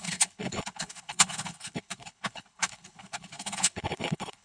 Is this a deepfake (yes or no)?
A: yes